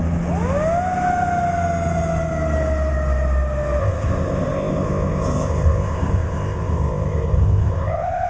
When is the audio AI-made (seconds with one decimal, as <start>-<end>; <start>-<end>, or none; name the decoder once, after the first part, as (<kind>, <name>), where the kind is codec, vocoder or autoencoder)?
3.8-8.3 (codec, ZipCodec)